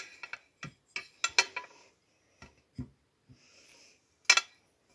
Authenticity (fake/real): real